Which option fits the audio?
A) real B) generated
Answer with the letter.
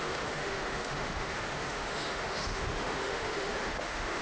B